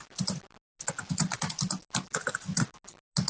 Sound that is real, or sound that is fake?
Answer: real